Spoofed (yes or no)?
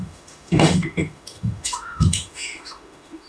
yes